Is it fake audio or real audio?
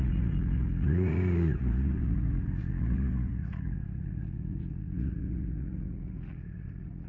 fake